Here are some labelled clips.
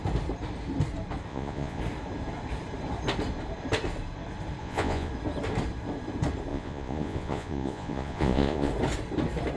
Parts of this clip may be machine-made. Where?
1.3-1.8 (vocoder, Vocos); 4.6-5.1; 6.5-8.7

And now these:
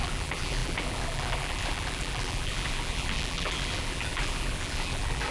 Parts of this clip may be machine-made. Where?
0.0-5.3 (vocoder, BigVGAN v2)

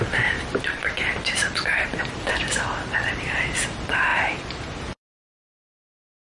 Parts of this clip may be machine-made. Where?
0.0-6.4 (vocoder, BigVGAN v2)